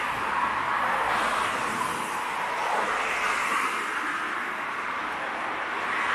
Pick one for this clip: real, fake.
real